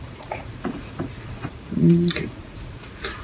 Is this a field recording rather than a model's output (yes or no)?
no